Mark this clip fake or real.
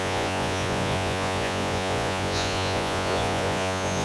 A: fake